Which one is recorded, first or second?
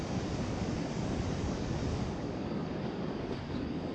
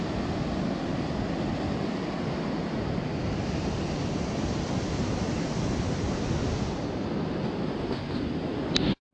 second